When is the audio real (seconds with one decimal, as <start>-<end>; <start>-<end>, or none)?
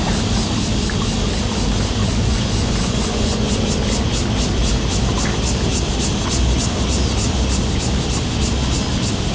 0.0-2.0; 3.6-9.3